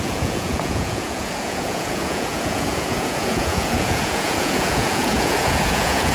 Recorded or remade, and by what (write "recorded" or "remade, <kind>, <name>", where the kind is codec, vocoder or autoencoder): remade, vocoder, Vocos